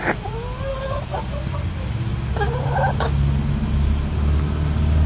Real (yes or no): yes